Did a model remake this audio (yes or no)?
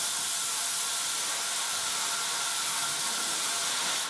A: no